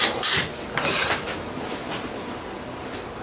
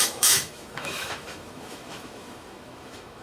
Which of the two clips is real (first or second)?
first